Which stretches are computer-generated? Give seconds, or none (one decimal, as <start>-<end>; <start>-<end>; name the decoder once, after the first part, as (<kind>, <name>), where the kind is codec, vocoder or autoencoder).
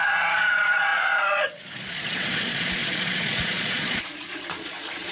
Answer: 0.0-5.1 (vocoder, Vocos)